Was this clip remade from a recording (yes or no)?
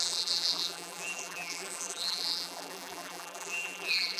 yes